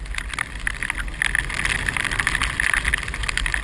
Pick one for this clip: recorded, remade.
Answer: recorded